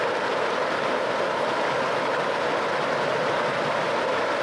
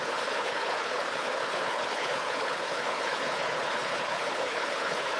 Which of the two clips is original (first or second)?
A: first